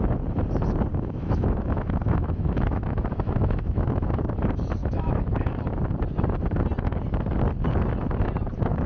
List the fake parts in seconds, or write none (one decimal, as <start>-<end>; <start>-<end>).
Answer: 0.9-4.1; 4.8-5.6